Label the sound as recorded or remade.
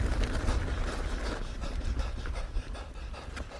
recorded